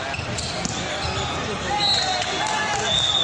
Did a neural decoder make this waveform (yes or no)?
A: no